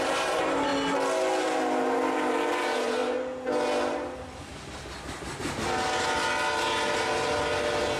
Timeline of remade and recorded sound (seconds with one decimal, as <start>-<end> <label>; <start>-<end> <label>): 0.0-0.7 remade; 0.7-1.4 recorded; 1.4-3.0 remade; 3.0-8.0 recorded